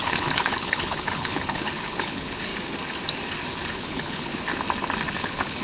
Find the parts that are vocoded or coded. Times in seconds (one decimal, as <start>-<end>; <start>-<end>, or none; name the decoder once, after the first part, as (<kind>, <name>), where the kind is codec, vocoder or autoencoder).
0.0-2.5 (codec, HILCodec); 3.7-4.3; 5.1-5.6